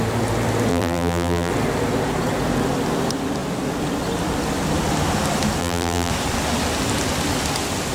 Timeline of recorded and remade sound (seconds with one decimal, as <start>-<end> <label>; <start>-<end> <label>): 0.0-0.7 recorded; 0.7-1.5 remade; 1.5-5.6 recorded; 5.6-6.1 remade; 6.1-7.9 recorded